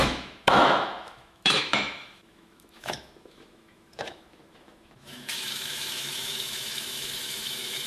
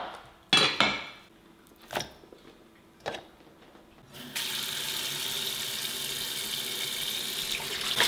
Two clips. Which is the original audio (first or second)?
second